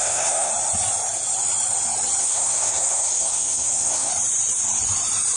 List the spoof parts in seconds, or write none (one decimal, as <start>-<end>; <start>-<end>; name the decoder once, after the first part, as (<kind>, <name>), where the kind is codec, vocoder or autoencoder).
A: 0.0-0.5 (codec, SNAC); 2.2-4.1